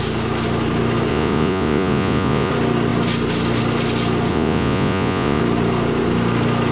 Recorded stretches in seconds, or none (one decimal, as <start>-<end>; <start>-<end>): 0.0-1.1; 2.5-4.3; 5.4-6.7